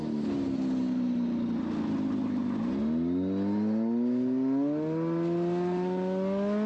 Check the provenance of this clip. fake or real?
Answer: real